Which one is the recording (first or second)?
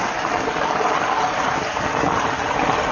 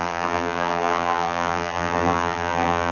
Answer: first